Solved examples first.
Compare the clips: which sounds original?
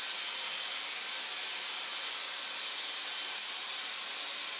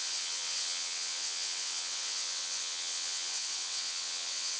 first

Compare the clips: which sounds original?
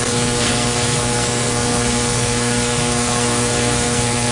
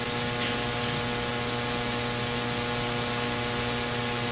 second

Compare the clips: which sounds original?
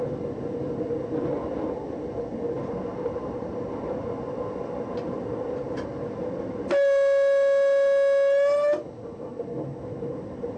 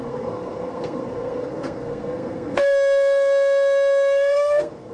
first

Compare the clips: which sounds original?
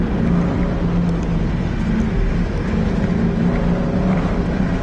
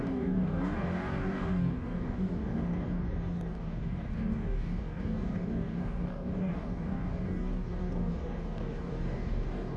first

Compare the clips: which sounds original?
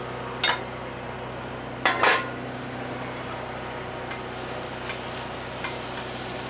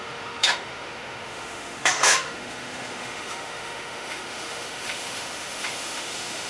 first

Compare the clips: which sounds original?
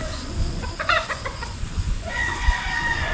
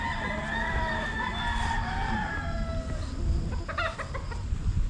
second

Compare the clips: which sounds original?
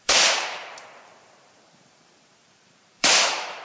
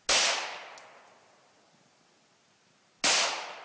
second